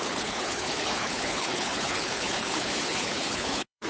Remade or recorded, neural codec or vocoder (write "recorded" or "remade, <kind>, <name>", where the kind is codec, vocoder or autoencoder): remade, codec, HILCodec